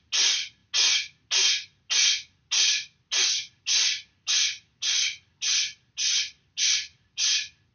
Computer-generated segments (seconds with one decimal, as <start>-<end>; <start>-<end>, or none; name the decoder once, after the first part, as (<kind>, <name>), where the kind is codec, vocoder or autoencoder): none